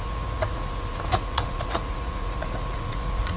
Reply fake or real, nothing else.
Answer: fake